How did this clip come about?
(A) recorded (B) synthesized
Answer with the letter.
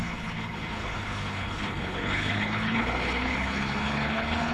B